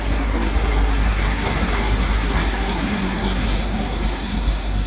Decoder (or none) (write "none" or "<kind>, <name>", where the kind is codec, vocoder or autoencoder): codec, SNAC